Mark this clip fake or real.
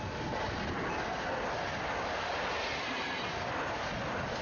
real